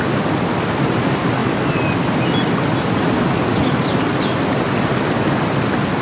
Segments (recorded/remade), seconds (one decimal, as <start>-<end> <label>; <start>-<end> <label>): 0.0-6.0 recorded